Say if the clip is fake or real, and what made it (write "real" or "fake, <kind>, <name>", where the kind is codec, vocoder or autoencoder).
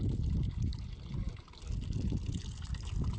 real